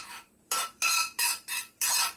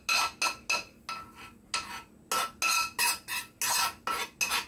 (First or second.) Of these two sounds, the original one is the second